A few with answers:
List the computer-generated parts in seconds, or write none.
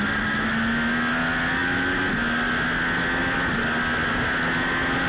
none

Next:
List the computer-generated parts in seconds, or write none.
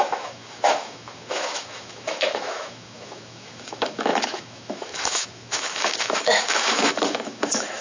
0.0-7.8 (autoencoder, DAC-VAE)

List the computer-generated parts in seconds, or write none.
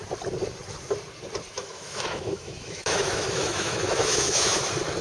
1.6-4.6 (autoencoder, DAC-VAE)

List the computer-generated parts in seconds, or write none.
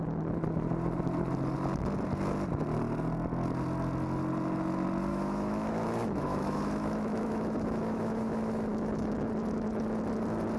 5.1-9.3 (autoencoder, DAC-VAE)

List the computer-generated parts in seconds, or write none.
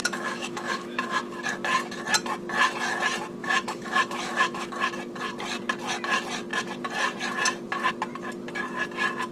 0.0-1.2 (autoencoder, DAC-VAE); 3.4-4.7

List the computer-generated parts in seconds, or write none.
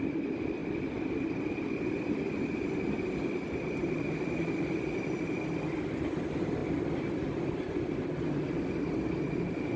none